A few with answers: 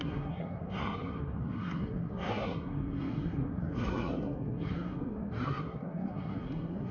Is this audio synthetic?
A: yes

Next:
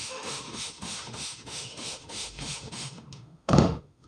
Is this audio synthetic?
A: yes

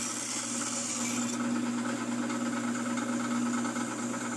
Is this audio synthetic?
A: no